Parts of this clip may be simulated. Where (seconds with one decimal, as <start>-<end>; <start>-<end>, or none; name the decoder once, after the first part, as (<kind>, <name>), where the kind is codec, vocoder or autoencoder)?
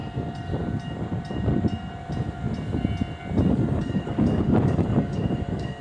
3.5-5.8 (codec, DAC)